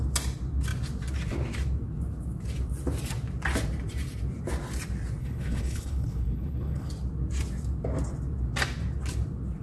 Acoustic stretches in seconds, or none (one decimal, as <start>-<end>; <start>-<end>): 0.0-5.2; 6.9-9.6